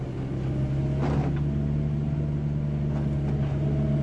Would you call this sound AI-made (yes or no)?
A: no